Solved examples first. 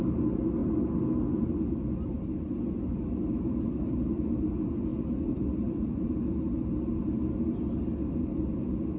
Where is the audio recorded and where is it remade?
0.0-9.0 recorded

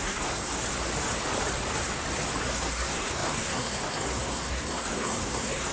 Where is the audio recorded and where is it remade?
0.0-0.6 remade; 0.6-2.5 recorded; 2.5-5.7 remade

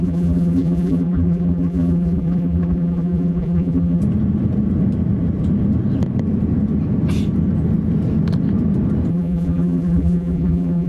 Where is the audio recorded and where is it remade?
0.0-4.0 remade; 4.0-9.1 recorded; 9.1-10.9 remade

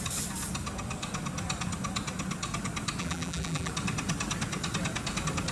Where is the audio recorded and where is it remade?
0.0-3.0 recorded; 3.0-3.7 remade; 3.7-5.5 recorded

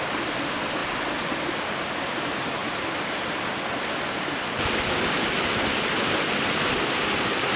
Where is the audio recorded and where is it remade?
0.0-7.6 recorded